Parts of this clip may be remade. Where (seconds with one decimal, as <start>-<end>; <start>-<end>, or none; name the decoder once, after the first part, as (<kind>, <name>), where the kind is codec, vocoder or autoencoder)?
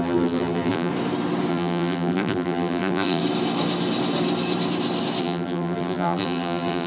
0.0-0.9 (vocoder, BigVGAN v2); 1.5-3.2; 5.2-6.9